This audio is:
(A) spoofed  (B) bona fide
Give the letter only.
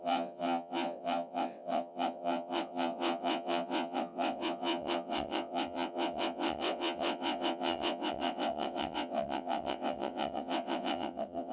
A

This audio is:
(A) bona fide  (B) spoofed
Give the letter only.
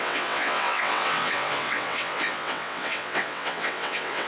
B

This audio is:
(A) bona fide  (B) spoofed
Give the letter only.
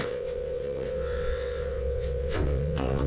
B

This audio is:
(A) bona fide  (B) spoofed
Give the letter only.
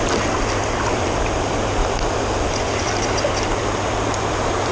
A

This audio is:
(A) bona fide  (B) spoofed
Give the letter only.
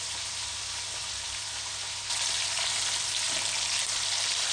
A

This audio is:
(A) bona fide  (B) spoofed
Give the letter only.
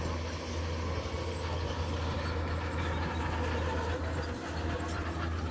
A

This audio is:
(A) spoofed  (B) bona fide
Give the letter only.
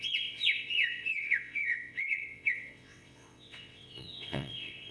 A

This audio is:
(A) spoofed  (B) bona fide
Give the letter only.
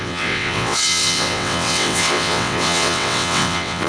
A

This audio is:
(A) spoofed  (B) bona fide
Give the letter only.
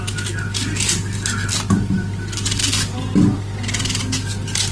B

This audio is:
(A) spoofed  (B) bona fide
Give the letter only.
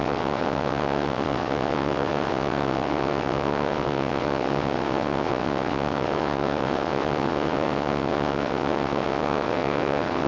A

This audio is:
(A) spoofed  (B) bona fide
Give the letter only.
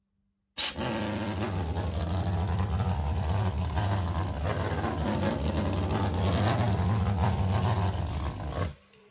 B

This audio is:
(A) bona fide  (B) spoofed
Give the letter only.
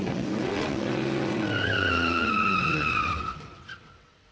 B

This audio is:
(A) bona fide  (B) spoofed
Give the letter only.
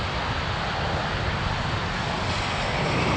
A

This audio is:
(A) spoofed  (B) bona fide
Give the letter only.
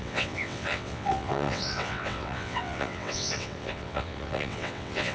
A